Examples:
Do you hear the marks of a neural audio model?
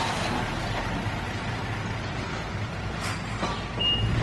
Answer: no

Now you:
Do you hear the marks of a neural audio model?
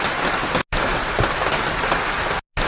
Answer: no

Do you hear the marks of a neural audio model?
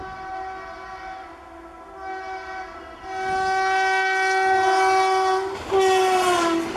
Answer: no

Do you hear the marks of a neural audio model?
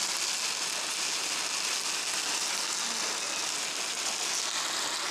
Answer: no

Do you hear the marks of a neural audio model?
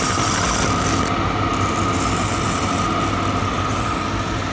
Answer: no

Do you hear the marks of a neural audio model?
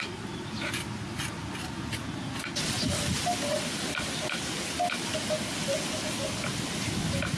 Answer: no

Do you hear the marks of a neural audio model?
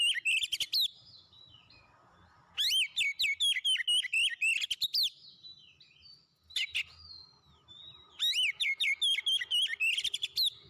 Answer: no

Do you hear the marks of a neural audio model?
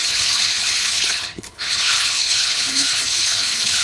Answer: yes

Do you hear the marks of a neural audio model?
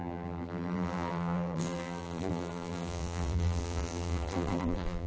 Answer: yes